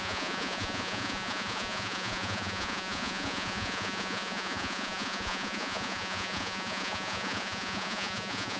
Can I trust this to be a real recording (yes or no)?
no